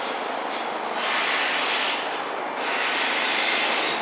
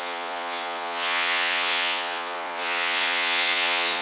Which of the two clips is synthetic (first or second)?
second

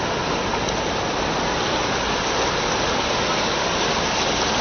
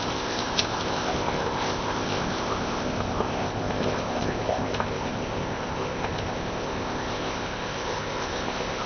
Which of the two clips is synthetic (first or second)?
second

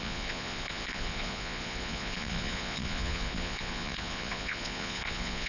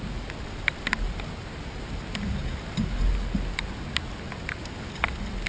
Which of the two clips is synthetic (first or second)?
first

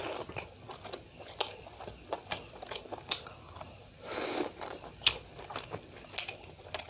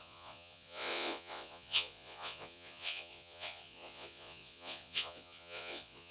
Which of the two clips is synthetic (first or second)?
second